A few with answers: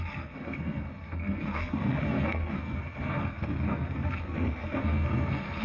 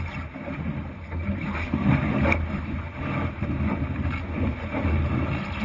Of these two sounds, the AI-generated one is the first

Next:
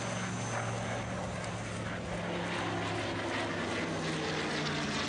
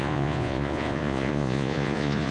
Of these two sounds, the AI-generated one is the second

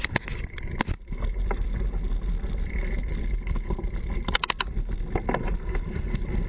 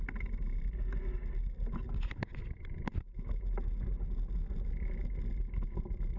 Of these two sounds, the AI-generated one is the first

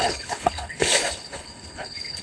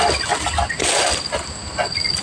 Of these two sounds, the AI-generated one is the first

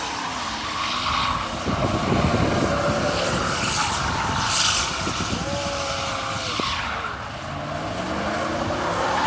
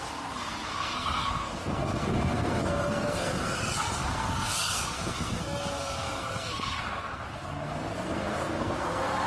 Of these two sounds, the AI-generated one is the second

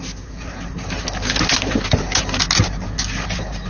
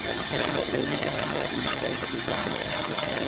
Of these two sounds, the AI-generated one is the second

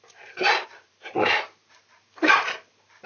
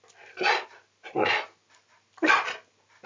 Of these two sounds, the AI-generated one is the first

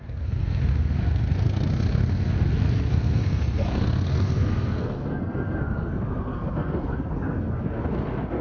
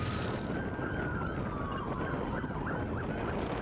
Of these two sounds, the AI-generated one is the first